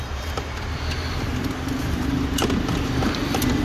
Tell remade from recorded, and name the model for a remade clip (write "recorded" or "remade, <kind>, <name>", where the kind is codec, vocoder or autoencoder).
recorded